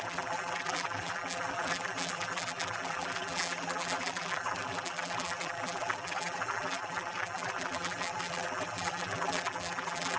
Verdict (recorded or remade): remade